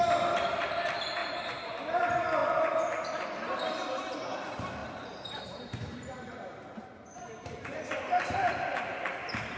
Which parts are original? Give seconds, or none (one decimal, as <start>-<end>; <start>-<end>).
0.0-1.2; 2.0-4.8